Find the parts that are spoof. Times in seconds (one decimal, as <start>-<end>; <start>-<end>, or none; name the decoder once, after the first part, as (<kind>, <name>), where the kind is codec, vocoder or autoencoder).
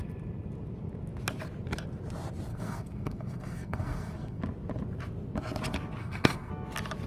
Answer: 2.5-4.4 (codec, SNAC); 6.0-6.5